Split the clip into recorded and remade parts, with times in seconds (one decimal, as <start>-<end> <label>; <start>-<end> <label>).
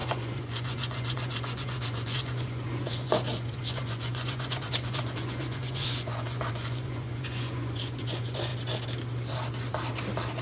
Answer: 0.0-8.5 remade; 8.5-10.4 recorded